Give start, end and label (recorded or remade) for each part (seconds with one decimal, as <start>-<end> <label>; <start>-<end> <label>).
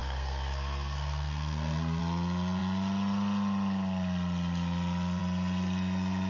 0.0-2.0 remade; 2.0-6.3 recorded